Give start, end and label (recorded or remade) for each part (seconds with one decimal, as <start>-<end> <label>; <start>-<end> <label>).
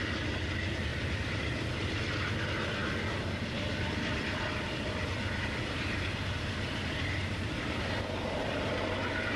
0.0-0.9 recorded; 0.9-1.7 remade; 1.7-2.8 recorded; 2.8-7.8 remade; 7.8-9.4 recorded